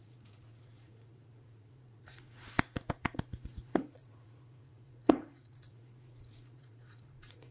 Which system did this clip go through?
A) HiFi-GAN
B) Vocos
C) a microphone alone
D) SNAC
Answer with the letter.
B